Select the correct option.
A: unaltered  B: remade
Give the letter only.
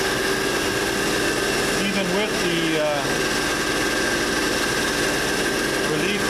A